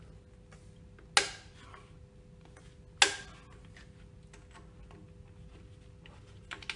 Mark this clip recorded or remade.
recorded